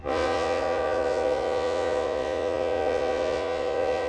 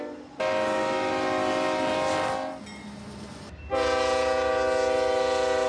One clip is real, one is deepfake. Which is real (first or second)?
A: second